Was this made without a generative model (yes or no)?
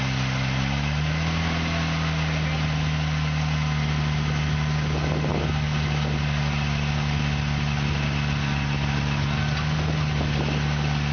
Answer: yes